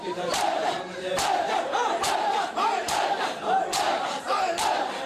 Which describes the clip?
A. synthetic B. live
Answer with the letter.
A